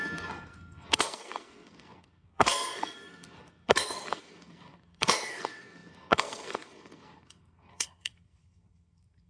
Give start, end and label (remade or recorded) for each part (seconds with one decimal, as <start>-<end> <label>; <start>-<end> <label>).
0.0-9.3 remade